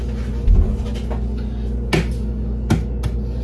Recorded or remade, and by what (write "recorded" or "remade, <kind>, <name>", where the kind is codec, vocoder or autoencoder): recorded